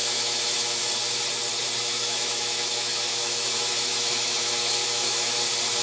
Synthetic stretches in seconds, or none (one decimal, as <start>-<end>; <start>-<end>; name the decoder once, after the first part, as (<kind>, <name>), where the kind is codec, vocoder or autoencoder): 0.0-0.9 (autoencoder, DAC-VAE); 1.8-5.3